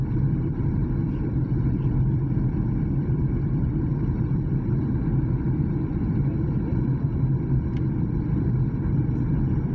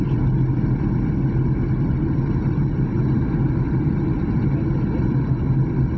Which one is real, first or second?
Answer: second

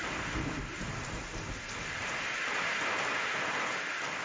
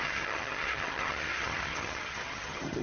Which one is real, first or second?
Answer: first